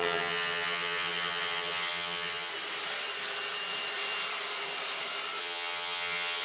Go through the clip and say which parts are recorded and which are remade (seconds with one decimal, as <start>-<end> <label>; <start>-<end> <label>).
0.0-2.5 remade; 2.5-5.4 recorded; 5.4-6.4 remade